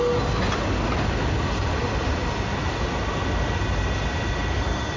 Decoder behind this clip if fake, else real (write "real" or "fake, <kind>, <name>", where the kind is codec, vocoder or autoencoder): real